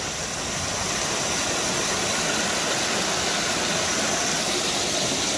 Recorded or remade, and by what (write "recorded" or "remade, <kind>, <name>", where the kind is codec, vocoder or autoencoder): recorded